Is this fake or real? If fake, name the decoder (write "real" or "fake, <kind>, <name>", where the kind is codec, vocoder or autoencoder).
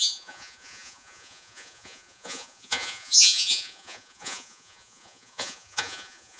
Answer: fake, vocoder, Vocos